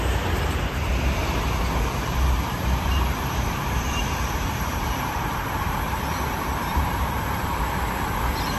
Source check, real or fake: fake